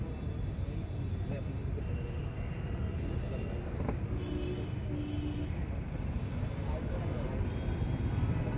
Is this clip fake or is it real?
real